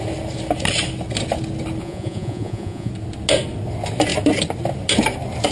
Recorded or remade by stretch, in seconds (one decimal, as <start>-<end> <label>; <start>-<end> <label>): 0.0-1.8 recorded; 1.8-2.9 remade; 2.9-5.5 recorded